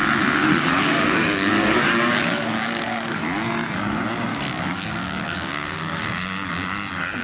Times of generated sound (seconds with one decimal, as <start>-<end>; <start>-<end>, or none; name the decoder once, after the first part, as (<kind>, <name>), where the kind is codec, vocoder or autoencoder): 0.4-3.2 (codec, DAC); 4.3-6.5

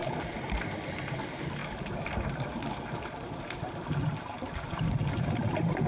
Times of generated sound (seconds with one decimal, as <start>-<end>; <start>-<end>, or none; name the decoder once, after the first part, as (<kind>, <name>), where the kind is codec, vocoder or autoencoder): 0.0-5.9 (vocoder, BigVGAN v2)

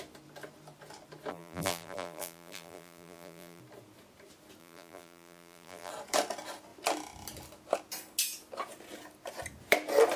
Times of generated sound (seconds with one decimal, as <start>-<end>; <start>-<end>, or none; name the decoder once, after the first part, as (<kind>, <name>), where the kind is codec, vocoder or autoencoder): 1.3-3.6 (vocoder, BigVGAN v2); 4.6-5.9

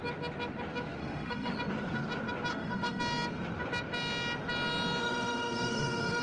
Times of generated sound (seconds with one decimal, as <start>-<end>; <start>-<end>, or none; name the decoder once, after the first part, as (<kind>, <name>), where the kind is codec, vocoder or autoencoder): 1.0-1.5 (autoencoder, DAC-VAE); 2.5-3.0; 5.0-6.2

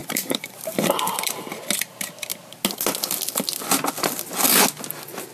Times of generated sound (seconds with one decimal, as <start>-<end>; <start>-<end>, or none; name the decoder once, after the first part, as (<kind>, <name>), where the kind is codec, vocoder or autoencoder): 0.0-1.5 (vocoder, BigVGAN v2)

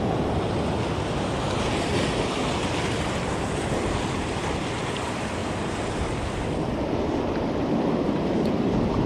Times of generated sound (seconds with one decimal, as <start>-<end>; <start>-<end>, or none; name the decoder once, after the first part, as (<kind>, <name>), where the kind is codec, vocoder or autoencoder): none

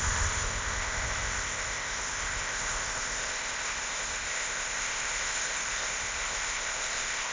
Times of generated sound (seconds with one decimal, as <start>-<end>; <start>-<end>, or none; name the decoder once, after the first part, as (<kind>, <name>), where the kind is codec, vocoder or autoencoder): 0.0-7.3 (codec, ZipCodec)

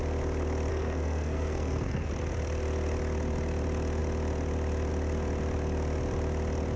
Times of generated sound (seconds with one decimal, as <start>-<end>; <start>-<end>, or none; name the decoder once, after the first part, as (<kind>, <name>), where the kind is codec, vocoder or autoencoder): 0.7-2.1 (codec, SNAC)